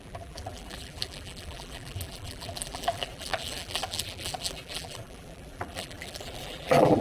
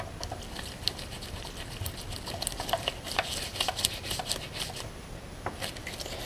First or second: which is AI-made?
first